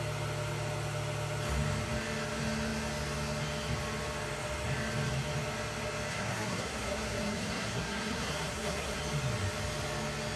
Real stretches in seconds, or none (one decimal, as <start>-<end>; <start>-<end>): 0.0-6.1; 9.0-10.4